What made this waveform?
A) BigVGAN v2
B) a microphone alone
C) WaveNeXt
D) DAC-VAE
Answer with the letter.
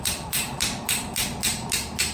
A